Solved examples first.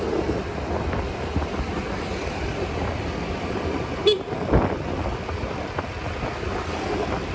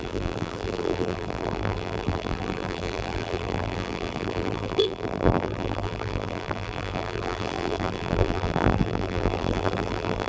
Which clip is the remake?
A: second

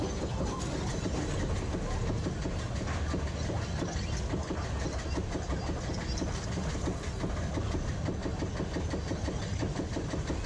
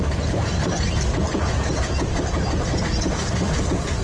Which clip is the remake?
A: second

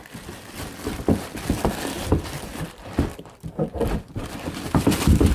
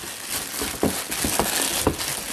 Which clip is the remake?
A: first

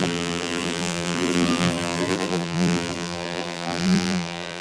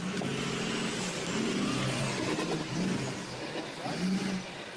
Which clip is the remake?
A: first